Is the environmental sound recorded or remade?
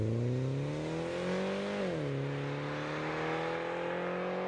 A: recorded